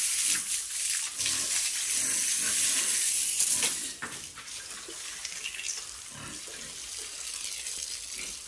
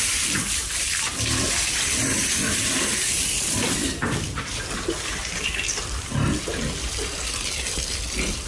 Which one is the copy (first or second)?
second